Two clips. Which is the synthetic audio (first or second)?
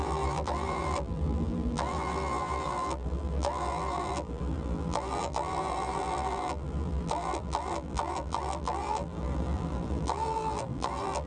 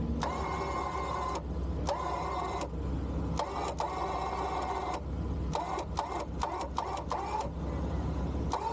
first